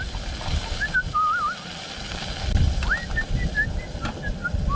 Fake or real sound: real